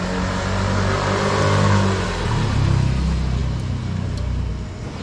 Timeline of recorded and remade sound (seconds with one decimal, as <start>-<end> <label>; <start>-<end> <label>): 0.0-5.0 recorded